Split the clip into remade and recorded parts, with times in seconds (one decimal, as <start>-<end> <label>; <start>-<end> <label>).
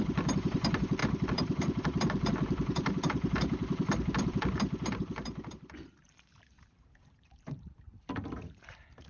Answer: 0.0-9.1 remade